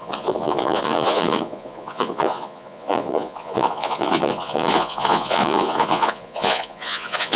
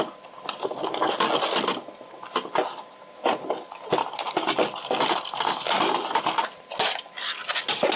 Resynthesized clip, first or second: first